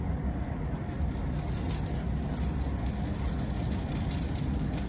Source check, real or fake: real